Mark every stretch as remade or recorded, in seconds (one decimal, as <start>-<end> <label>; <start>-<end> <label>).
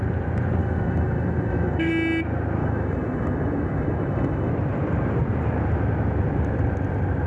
0.0-0.6 recorded; 0.6-1.9 remade; 1.9-2.6 recorded; 2.6-4.5 remade; 4.5-7.3 recorded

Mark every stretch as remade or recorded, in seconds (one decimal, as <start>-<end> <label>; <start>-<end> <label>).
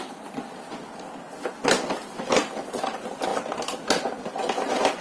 0.0-5.0 recorded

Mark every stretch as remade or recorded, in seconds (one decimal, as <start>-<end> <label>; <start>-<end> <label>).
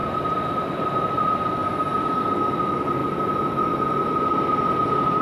0.0-1.6 remade; 1.6-2.6 recorded; 2.6-3.0 remade; 3.0-4.6 recorded; 4.6-5.2 remade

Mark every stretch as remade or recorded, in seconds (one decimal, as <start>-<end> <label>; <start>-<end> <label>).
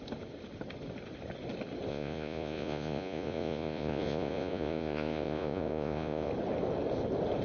0.0-1.9 recorded; 1.9-6.3 remade; 6.3-7.4 recorded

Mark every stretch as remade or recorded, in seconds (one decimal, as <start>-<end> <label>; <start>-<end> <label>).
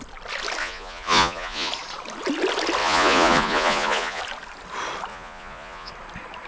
0.0-0.6 recorded; 0.6-1.7 remade; 1.7-2.8 recorded; 2.8-4.2 remade; 4.2-5.1 recorded; 5.1-5.9 remade; 5.9-6.5 recorded